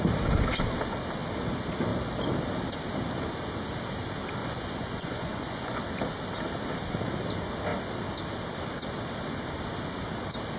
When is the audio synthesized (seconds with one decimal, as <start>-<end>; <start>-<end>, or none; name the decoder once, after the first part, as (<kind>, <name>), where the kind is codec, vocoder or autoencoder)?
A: 4.4-5.8 (vocoder, Vocos)